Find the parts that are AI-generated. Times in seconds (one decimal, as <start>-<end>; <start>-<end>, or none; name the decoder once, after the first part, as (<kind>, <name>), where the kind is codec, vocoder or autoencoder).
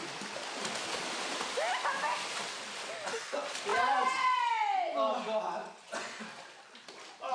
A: 5.6-6.2 (vocoder, Vocos)